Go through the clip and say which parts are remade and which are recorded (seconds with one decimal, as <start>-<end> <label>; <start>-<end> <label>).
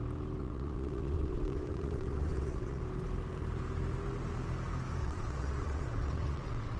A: 0.0-0.4 recorded; 0.4-2.8 remade; 2.8-5.0 recorded; 5.0-6.8 remade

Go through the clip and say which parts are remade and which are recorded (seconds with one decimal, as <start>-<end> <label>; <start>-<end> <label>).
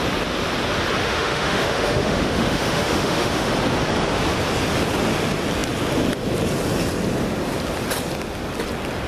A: 0.0-1.0 recorded; 1.0-3.5 remade; 3.5-9.1 recorded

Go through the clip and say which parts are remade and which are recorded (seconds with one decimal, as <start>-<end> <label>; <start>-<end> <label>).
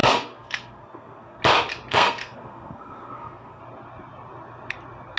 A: 0.0-1.4 remade; 1.4-1.9 recorded; 1.9-3.6 remade; 3.6-5.2 recorded